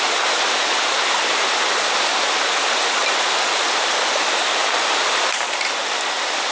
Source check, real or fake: real